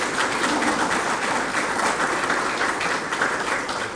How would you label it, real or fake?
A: real